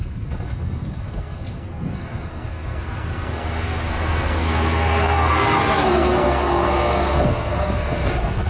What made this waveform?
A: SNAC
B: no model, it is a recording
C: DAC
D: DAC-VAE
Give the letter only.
A